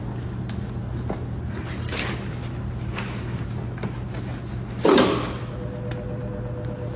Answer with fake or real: real